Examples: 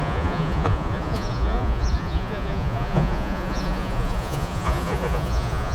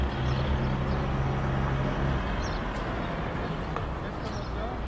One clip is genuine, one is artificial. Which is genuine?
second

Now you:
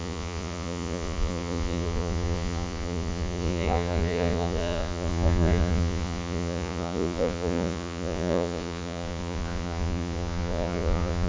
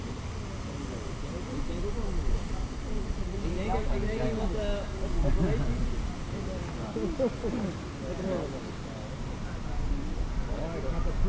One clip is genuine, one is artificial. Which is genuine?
second